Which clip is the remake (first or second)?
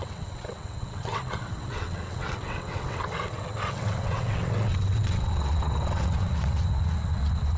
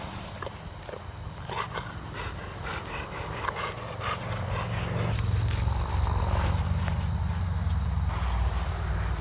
first